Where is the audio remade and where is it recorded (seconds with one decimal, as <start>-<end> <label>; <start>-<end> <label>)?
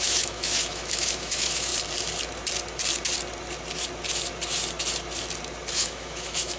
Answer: 0.0-1.7 remade; 1.7-5.7 recorded; 5.7-6.6 remade